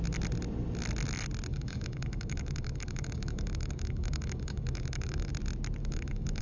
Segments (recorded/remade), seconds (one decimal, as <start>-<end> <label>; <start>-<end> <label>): 0.0-1.5 recorded; 1.5-5.3 remade; 5.3-5.8 recorded; 5.8-6.4 remade